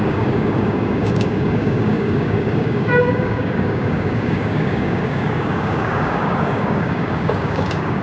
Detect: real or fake fake